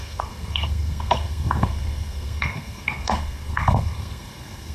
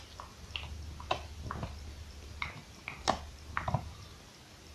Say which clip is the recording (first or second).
second